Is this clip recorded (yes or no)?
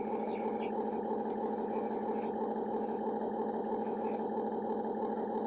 yes